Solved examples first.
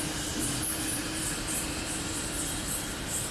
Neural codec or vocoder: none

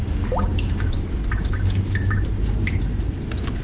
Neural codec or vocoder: none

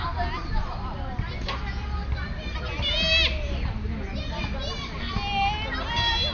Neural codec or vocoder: none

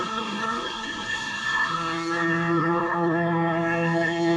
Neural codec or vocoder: codec, SNAC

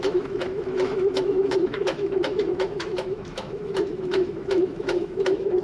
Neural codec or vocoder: autoencoder, DAC-VAE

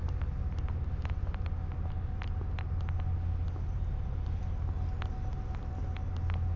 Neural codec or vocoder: none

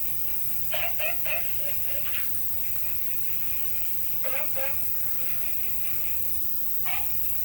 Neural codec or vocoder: none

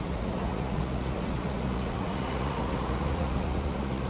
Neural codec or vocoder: vocoder, Vocos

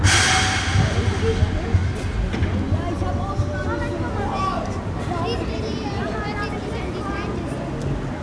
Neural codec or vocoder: none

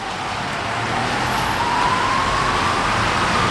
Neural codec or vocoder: none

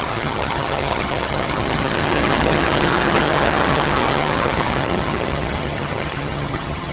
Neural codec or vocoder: vocoder, HiFi-GAN